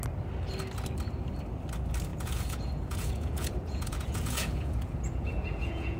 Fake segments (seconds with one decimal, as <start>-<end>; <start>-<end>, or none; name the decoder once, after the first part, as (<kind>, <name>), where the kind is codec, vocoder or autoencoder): 2.1-6.0 (vocoder, Vocos)